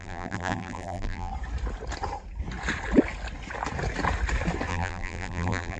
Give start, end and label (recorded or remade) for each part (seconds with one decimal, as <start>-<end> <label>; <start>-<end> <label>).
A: 0.0-1.3 remade; 1.3-4.7 recorded; 4.7-5.8 remade